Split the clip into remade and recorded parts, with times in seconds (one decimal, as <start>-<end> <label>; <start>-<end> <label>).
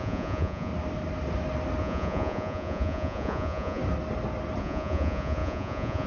0.0-0.7 remade; 0.7-1.8 recorded; 1.8-3.8 remade; 3.8-4.6 recorded; 4.6-6.1 remade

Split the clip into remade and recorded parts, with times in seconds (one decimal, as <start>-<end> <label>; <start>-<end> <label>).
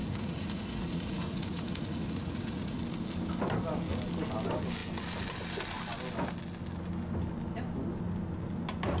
0.0-2.8 remade; 2.8-9.0 recorded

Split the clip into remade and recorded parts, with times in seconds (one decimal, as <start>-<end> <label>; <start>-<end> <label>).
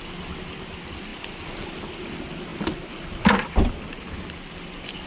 0.0-5.1 recorded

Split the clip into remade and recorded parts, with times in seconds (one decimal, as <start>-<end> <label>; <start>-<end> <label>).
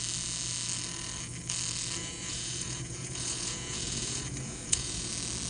0.0-2.0 recorded; 2.0-5.1 remade; 5.1-5.5 recorded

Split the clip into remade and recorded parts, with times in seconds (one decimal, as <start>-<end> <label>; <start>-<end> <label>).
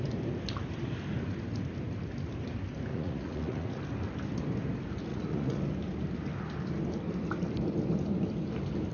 0.0-2.9 recorded; 2.9-3.8 remade; 3.8-5.1 recorded; 5.1-5.6 remade; 5.6-8.9 recorded